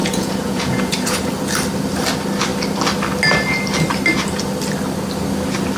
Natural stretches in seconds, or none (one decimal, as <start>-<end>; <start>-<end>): 1.2-5.8